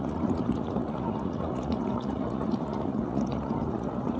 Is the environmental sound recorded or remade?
remade